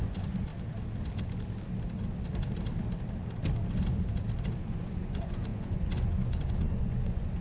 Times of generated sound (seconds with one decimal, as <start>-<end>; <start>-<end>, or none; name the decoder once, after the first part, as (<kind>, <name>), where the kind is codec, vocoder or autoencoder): 0.0-0.5 (vocoder, Vocos); 4.7-7.4